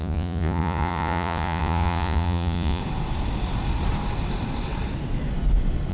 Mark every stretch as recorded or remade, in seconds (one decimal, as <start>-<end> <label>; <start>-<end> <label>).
0.0-2.8 remade; 2.8-5.9 recorded